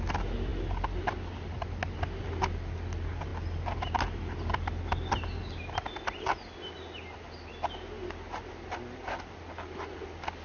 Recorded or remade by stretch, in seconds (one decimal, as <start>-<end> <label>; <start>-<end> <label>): 0.0-10.4 recorded